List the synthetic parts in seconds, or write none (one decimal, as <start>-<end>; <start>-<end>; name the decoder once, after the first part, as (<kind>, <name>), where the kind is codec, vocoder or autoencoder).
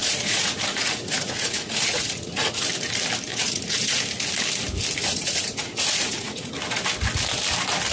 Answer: 0.0-2.7 (vocoder, Vocos); 3.3-4.0; 5.0-6.5